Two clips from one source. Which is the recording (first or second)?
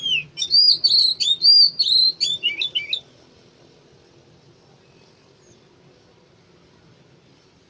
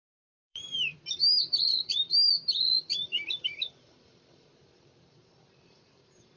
first